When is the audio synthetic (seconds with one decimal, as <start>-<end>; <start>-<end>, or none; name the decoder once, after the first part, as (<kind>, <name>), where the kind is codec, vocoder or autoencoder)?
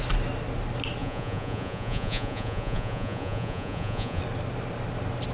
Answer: 1.0-4.2 (vocoder, Vocos)